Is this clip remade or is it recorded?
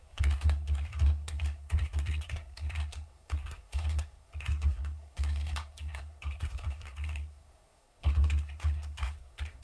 remade